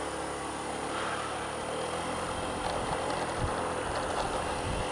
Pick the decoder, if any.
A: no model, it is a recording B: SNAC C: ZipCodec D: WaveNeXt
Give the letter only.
A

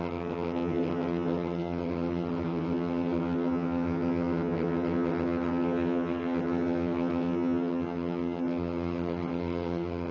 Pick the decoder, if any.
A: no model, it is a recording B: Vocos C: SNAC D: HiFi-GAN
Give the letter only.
D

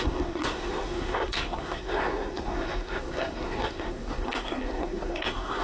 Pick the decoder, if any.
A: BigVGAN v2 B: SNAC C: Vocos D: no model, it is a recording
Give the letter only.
B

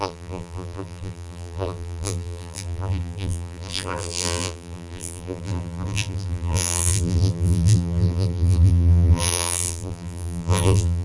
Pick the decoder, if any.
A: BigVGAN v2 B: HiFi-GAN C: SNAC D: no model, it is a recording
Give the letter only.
A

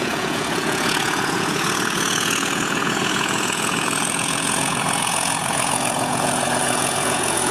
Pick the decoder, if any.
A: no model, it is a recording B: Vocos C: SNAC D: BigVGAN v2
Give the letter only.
B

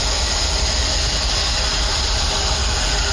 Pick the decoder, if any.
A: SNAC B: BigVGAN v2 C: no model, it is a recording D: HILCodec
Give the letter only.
C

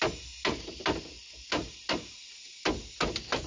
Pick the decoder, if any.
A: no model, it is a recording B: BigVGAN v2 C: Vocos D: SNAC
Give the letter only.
A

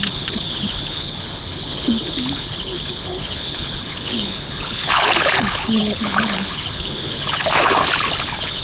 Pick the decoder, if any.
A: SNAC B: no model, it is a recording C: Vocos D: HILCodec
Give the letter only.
D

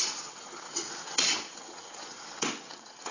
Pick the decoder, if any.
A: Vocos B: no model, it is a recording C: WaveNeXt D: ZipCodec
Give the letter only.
C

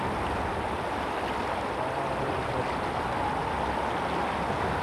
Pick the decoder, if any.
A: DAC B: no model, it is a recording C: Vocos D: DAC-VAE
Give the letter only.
B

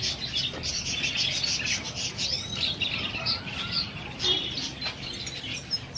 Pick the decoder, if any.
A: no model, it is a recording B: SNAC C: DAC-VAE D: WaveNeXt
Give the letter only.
A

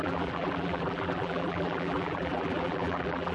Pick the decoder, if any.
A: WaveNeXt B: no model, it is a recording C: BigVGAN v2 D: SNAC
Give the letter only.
C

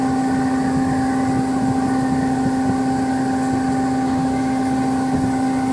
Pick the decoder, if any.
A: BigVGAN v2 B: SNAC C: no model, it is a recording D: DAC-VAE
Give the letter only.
C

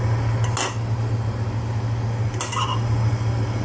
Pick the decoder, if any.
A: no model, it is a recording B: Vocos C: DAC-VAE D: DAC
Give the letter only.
A